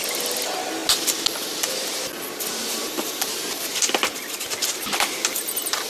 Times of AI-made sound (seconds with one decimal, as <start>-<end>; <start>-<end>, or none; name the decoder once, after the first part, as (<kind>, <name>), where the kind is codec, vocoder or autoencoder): none